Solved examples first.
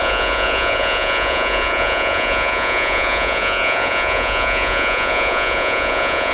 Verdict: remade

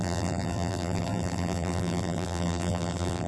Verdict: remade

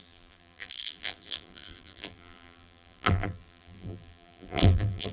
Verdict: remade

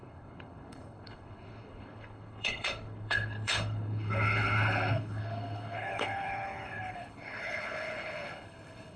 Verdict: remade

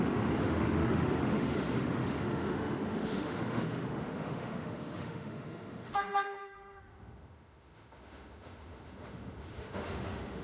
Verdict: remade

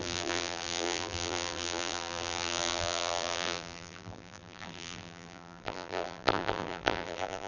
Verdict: remade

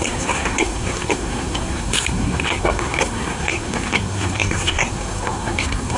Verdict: remade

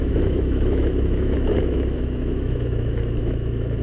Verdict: remade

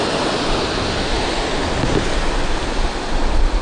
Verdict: recorded